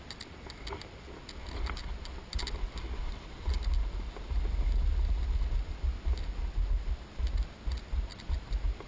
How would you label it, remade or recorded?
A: recorded